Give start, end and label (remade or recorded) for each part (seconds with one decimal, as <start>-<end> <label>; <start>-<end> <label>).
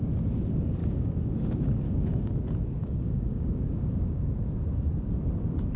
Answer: 0.0-0.8 recorded; 0.8-2.3 remade; 2.3-2.8 recorded; 2.8-4.2 remade; 4.2-5.8 recorded